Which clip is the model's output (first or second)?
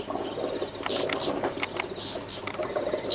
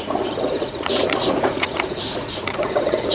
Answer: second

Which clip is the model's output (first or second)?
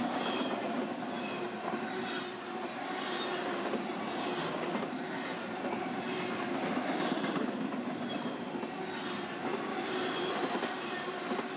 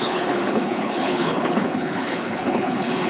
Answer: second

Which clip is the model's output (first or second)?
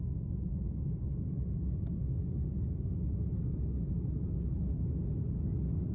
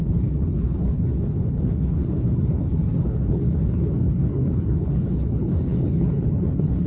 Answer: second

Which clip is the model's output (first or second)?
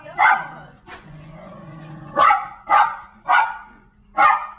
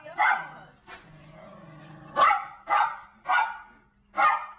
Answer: first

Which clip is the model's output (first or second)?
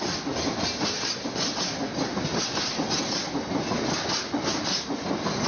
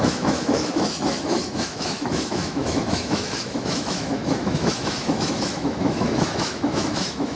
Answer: second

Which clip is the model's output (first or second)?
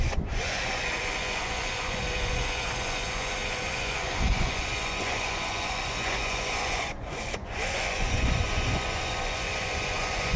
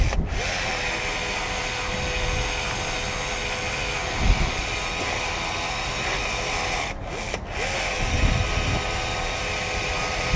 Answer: first